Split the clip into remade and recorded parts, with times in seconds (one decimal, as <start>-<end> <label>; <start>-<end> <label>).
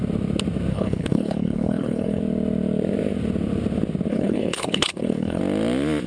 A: 0.0-0.7 recorded; 0.7-2.2 remade; 2.2-4.1 recorded; 4.1-5.4 remade; 5.4-6.1 recorded